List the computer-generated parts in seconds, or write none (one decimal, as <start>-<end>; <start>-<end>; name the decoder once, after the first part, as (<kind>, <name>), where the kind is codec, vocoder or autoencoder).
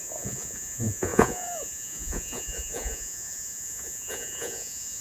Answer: 0.0-5.0 (vocoder, Vocos)